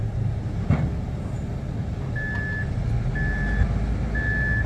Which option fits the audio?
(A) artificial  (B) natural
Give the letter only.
B